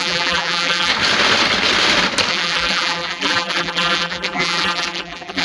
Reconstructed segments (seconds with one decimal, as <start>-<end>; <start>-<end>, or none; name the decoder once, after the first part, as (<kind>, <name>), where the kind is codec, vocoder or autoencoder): 0.0-0.9 (vocoder, BigVGAN v2); 2.3-5.4